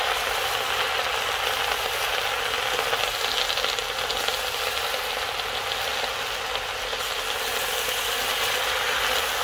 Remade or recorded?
recorded